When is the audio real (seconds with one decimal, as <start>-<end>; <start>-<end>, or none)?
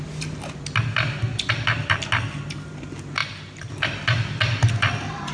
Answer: 0.0-5.3